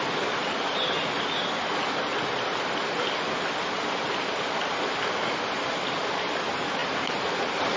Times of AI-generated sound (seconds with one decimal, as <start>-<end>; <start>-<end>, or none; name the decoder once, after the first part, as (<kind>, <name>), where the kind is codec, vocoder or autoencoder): none